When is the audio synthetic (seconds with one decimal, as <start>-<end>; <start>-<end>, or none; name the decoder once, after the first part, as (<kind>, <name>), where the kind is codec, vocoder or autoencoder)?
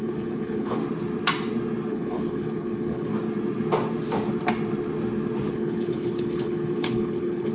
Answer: 0.0-0.8 (codec, HILCodec); 1.9-3.1; 5.5-7.5